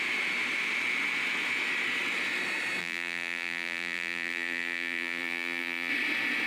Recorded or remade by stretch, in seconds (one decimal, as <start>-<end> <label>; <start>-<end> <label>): 0.0-2.8 recorded; 2.8-5.9 remade; 5.9-6.5 recorded